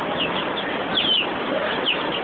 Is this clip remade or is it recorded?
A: recorded